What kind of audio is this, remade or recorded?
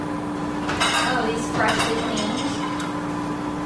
recorded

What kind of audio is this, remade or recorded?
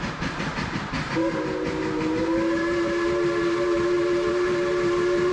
remade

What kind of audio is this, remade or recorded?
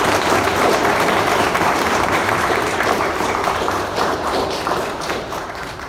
remade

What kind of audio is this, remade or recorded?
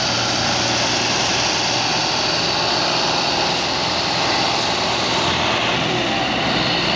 remade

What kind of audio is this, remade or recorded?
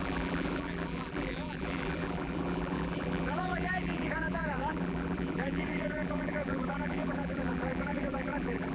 remade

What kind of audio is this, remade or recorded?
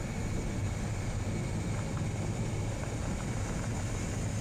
recorded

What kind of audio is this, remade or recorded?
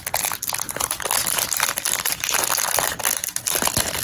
recorded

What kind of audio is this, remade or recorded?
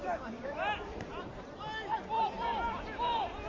remade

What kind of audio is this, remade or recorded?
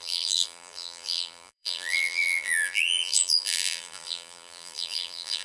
remade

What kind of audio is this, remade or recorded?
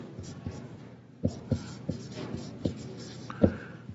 recorded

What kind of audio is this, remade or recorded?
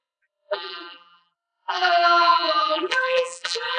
remade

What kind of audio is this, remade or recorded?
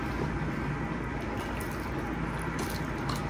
recorded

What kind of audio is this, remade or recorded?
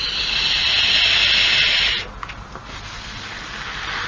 recorded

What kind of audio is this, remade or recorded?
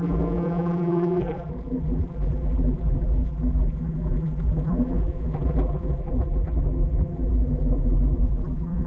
remade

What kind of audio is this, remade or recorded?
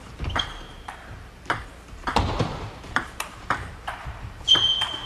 remade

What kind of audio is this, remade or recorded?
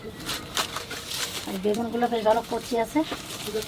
remade